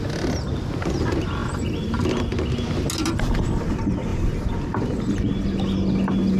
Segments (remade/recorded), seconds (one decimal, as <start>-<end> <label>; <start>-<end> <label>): 0.0-1.4 recorded; 1.4-2.1 remade; 2.1-4.1 recorded; 4.1-4.6 remade; 4.6-6.4 recorded